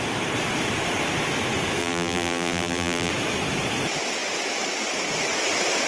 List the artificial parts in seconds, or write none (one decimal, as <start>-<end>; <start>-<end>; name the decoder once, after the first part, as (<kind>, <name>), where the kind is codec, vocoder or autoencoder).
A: 1.8-3.1 (vocoder, BigVGAN v2)